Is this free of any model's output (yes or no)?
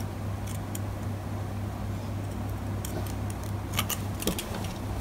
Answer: yes